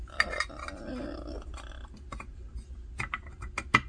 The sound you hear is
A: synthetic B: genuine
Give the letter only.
B